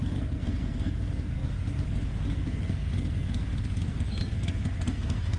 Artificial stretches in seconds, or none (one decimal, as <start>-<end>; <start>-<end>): 0.0-5.4

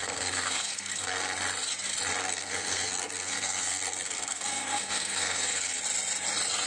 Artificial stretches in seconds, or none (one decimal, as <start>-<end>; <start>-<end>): 0.0-1.2; 2.2-5.8

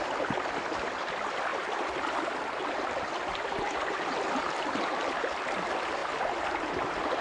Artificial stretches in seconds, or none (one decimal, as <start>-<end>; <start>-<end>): 0.0-7.2

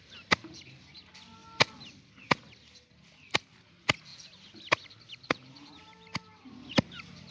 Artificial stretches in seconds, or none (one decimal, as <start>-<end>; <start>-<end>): none

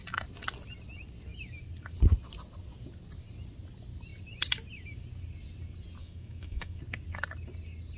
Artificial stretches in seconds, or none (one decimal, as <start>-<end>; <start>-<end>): 6.0-6.8

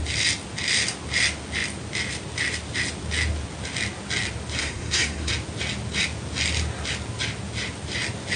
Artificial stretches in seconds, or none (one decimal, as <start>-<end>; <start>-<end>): 4.6-5.3

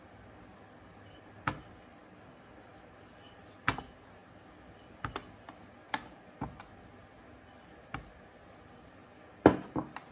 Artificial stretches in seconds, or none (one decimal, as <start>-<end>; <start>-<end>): none

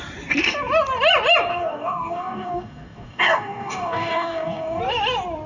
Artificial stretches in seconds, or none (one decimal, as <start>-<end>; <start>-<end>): 1.5-4.8